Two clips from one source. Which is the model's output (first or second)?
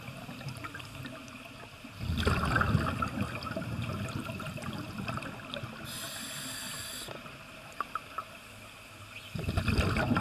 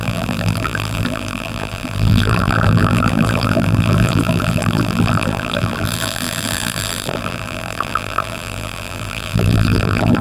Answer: second